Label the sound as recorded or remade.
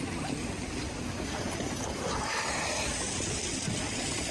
recorded